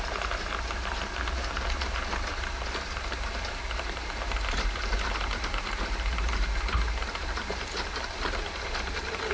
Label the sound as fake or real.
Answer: fake